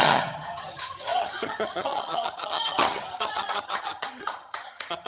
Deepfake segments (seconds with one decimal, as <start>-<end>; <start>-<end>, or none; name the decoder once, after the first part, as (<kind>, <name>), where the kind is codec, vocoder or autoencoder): 0.0-5.1 (vocoder, HiFi-GAN)